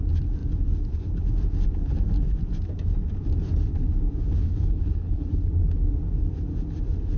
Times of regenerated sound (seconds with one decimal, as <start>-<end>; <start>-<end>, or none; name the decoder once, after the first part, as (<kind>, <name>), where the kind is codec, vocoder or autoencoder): 4.4-5.5 (codec, HILCodec)

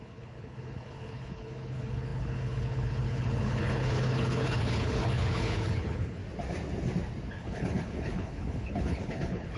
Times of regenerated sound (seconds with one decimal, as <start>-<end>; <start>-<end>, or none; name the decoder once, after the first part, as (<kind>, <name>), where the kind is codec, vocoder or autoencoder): 0.0-6.2 (codec, HILCodec); 7.3-9.6

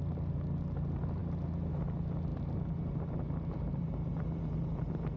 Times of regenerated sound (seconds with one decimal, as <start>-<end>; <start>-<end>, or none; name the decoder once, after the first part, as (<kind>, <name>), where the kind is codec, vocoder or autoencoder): none

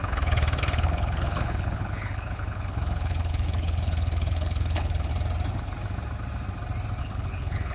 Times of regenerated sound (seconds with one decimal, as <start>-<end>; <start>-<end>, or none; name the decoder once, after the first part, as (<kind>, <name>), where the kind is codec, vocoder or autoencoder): 0.0-5.1 (codec, HILCodec); 7.0-7.7